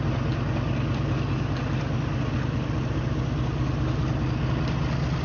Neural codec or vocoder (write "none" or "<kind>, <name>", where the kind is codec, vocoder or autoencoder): none